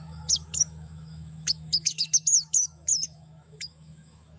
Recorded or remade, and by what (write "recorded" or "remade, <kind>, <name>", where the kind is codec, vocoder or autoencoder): remade, autoencoder, DAC-VAE